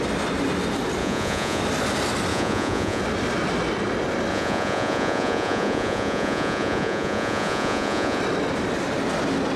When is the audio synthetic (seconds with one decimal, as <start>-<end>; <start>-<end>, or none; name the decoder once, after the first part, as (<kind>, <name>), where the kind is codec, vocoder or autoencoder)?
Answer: 1.0-1.6 (vocoder, Vocos); 2.3-3.0; 4.3-8.2